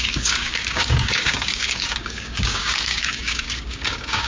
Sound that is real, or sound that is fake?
fake